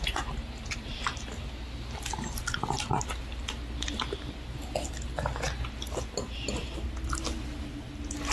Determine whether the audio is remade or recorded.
recorded